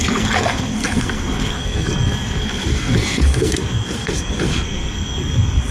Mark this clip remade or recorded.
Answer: remade